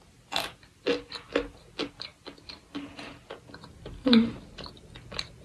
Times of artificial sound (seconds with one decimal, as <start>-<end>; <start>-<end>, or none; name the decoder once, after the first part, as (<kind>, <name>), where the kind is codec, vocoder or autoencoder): none